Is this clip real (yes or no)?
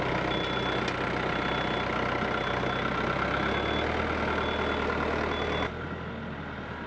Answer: yes